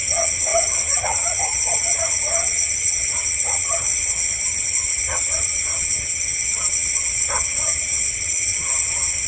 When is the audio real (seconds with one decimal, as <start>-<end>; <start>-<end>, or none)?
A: none